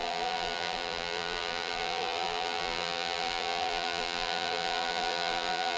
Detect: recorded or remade remade